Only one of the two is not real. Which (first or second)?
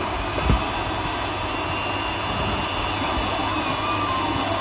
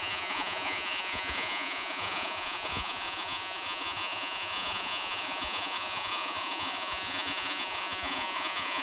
second